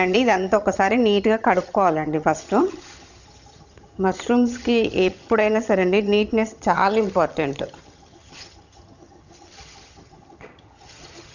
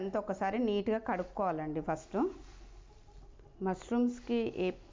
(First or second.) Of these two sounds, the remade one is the first